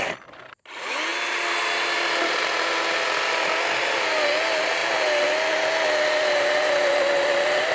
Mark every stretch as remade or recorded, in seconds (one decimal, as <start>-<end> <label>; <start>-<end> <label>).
0.0-7.7 recorded